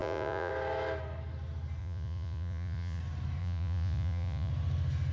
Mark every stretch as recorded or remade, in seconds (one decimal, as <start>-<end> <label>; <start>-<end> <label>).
0.0-0.5 remade; 0.5-1.8 recorded; 1.8-3.0 remade; 3.0-3.4 recorded; 3.4-4.5 remade; 4.5-5.1 recorded